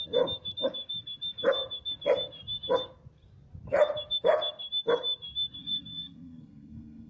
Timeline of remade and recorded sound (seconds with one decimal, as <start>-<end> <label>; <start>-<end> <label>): 0.0-5.6 recorded; 5.6-7.1 remade